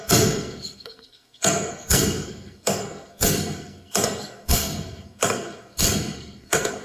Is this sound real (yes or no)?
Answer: no